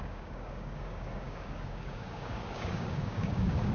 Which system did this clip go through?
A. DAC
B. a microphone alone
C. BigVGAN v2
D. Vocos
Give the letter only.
A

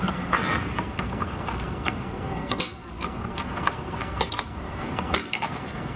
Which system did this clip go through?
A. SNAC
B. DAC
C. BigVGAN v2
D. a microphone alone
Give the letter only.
A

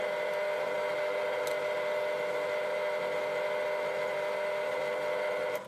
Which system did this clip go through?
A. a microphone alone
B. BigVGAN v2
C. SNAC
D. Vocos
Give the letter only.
A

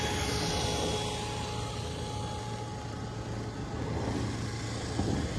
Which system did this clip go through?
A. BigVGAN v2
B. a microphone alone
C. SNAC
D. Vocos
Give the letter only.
B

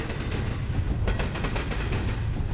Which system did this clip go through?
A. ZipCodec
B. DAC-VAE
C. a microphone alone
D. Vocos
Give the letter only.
C